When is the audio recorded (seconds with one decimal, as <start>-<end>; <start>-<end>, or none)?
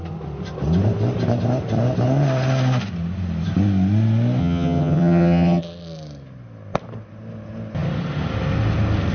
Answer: 0.0-4.4; 5.6-9.1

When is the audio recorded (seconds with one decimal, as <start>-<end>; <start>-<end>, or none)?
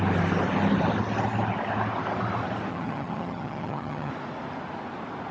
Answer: 0.0-2.7; 4.1-5.3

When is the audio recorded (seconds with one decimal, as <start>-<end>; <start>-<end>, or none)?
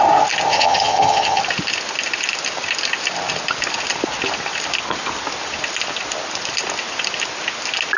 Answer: 0.0-0.5; 1.4-8.0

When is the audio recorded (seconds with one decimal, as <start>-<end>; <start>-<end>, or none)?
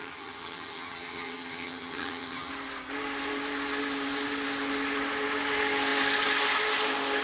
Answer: 2.5-7.2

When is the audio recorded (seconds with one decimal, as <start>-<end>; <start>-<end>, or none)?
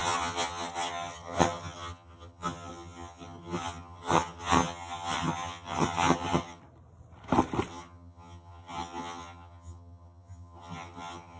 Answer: 6.6-7.7